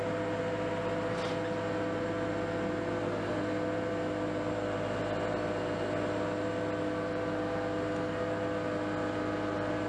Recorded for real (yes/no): yes